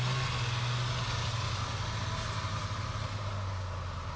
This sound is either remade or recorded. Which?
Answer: recorded